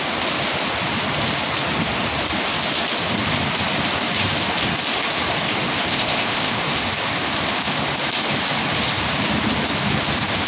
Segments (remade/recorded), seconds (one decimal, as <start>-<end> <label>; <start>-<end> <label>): 0.0-5.9 recorded; 5.9-6.6 remade; 6.6-10.5 recorded